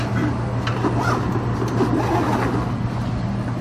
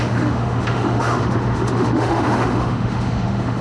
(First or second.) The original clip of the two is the first